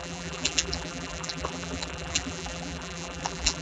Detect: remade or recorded remade